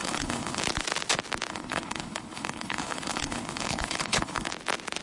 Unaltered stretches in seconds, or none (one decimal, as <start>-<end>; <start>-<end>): 0.6-1.5; 4.5-5.0